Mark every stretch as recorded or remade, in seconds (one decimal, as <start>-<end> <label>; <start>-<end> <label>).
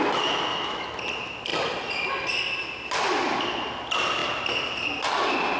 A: 0.0-0.5 recorded; 0.5-1.0 remade; 1.0-5.6 recorded